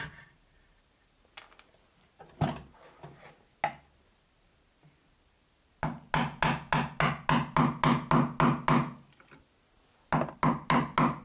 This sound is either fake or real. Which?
real